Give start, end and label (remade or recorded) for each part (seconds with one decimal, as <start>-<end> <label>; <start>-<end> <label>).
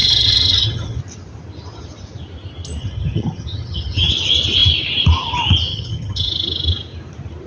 0.0-1.0 remade; 1.0-2.8 recorded; 2.8-4.1 remade; 4.1-5.7 recorded; 5.7-6.3 remade; 6.3-7.5 recorded